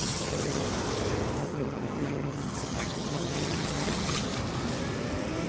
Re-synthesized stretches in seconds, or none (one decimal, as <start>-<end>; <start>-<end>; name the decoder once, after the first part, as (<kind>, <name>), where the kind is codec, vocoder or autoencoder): 0.0-0.6 (vocoder, HiFi-GAN); 1.4-4.3